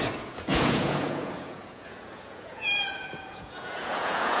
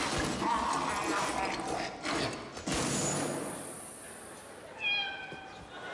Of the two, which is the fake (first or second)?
first